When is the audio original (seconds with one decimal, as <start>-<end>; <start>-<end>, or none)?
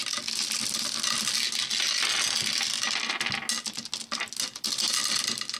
0.0-5.6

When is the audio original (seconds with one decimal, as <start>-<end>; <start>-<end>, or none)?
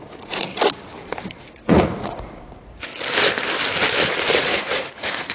0.5-1.5; 2.9-4.4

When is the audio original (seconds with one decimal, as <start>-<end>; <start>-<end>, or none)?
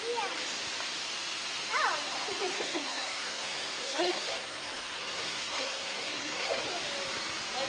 0.0-2.5; 6.6-7.7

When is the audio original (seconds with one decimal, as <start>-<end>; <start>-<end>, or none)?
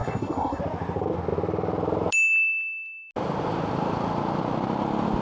0.6-5.2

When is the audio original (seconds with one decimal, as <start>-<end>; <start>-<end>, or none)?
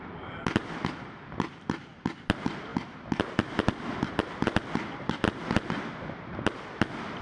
0.0-0.6; 1.8-7.2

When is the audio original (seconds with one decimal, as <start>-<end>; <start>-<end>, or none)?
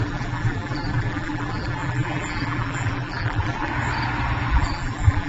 3.7-4.5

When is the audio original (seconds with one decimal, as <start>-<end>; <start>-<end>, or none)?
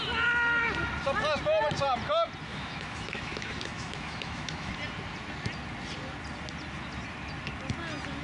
0.0-2.5; 4.7-8.2